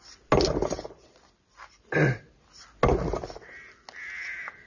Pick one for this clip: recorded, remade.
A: recorded